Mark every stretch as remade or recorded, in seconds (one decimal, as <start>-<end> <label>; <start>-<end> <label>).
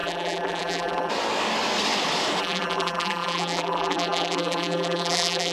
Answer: 0.0-1.1 remade; 1.1-2.4 recorded; 2.4-5.5 remade